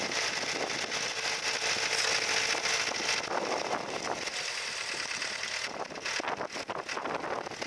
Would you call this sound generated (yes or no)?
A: no